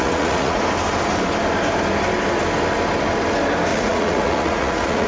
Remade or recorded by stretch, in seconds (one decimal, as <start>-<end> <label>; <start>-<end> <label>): 0.0-0.6 remade; 0.6-3.7 recorded; 3.7-5.1 remade